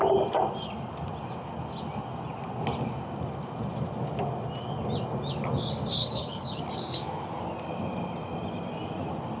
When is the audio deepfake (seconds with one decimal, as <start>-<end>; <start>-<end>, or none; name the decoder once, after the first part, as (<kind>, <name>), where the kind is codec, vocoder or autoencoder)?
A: 6.0-6.6 (codec, HILCodec)